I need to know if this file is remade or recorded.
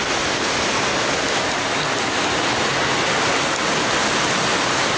recorded